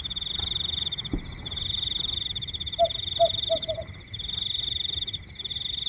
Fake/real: real